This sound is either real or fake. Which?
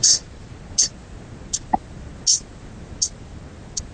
real